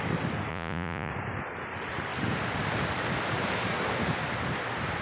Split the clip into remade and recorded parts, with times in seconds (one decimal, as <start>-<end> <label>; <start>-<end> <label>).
0.0-0.5 recorded; 0.5-1.1 remade; 1.1-5.0 recorded